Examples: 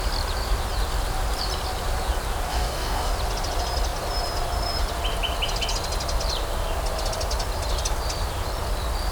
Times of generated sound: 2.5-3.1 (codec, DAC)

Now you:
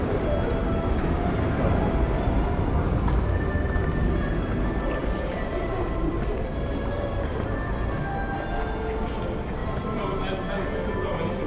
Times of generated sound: 5.0-6.9 (vocoder, BigVGAN v2); 9.6-10.2

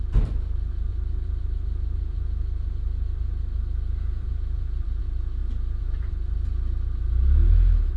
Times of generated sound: 0.9-5.0 (vocoder, BigVGAN v2); 5.4-6.1

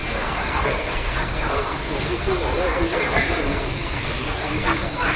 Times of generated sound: 0.0-5.2 (codec, SNAC)

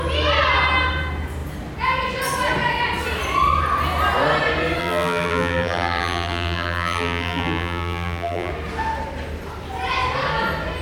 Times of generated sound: 4.8-8.5 (vocoder, BigVGAN v2)

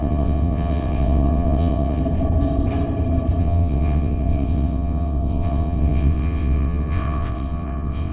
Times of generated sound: 0.0-2.0 (vocoder, WaveNeXt); 3.4-8.1

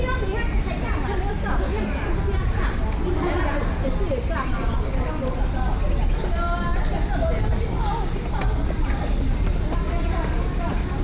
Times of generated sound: none

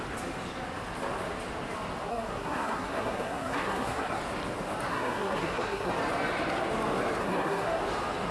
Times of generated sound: 2.1-4.2 (codec, SNAC); 4.9-5.9; 7.2-7.8